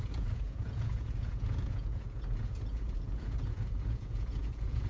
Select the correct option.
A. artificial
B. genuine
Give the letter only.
A